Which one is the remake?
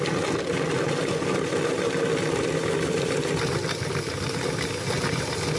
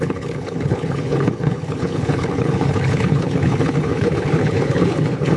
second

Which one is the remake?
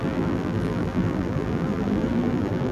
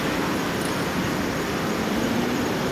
first